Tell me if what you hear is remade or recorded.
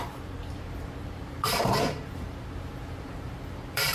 remade